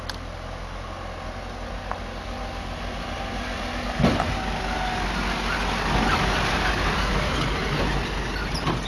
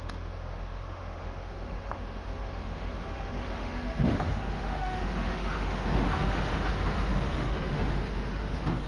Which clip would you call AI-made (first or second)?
second